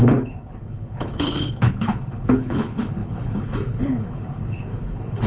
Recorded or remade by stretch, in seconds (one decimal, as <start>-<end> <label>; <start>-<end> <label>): 0.0-5.3 remade

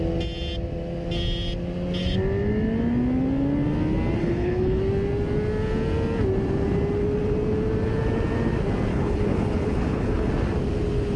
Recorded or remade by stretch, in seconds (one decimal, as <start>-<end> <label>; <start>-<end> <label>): 0.0-4.2 recorded; 4.2-4.8 remade; 4.8-8.9 recorded; 8.9-10.3 remade; 10.3-11.2 recorded

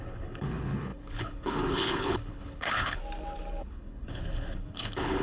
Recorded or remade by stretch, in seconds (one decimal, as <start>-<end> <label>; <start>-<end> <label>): 0.0-3.0 remade; 3.0-3.6 recorded; 3.6-5.2 remade

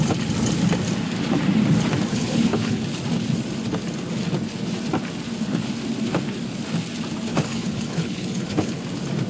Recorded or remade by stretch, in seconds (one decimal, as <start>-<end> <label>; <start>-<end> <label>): 0.0-2.1 recorded; 2.1-2.8 remade; 2.8-7.3 recorded; 7.3-8.8 remade; 8.8-9.3 recorded

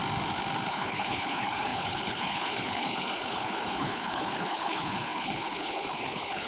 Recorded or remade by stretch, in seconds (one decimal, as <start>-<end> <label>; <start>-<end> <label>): 0.0-0.7 recorded; 0.7-6.5 remade

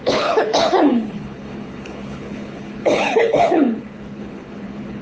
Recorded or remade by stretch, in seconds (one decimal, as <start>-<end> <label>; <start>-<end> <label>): 0.0-5.0 remade

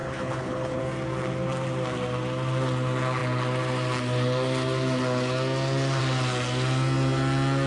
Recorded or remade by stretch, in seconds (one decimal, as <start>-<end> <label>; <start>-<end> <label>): 0.0-0.8 remade; 0.8-7.7 recorded

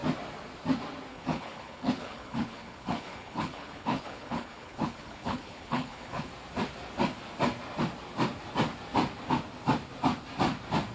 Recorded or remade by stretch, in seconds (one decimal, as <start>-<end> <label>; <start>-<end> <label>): 0.0-1.1 recorded; 1.1-6.3 remade; 6.3-10.9 recorded